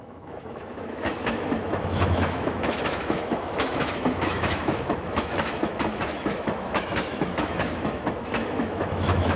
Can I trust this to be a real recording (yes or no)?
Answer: no